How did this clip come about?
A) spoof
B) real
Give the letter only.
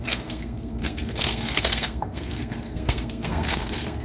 A